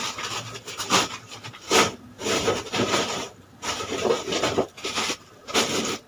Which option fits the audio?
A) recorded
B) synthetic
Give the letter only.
B